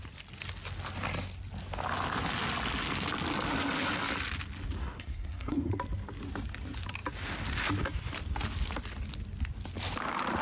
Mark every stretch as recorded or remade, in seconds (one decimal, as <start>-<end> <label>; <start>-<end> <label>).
0.0-4.8 recorded; 4.8-5.7 remade; 5.7-10.4 recorded